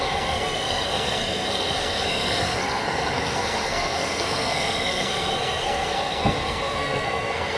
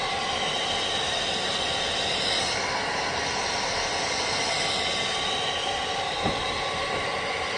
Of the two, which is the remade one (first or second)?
first